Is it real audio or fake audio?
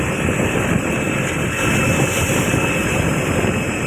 real